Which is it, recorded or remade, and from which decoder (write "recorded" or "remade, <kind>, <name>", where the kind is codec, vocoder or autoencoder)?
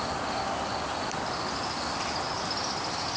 recorded